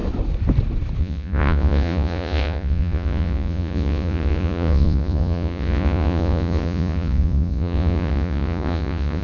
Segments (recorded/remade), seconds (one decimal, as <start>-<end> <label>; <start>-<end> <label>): 0.0-1.0 recorded; 1.0-9.2 remade